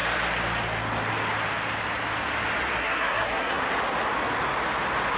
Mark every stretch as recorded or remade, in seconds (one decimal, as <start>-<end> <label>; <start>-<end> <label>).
0.0-2.8 recorded; 2.8-3.6 remade; 3.6-5.2 recorded